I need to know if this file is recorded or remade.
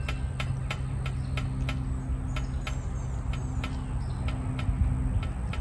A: recorded